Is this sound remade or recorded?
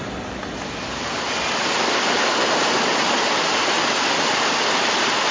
recorded